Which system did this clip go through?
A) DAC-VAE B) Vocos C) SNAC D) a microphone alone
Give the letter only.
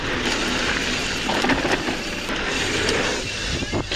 D